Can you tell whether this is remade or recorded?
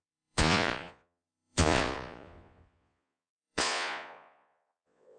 remade